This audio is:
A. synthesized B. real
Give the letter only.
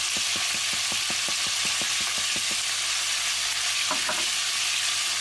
B